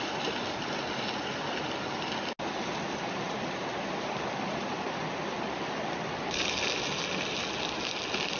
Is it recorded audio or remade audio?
recorded